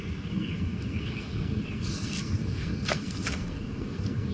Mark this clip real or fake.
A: fake